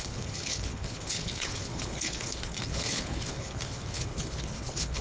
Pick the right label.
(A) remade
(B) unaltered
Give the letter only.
A